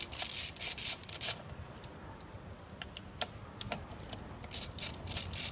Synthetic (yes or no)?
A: no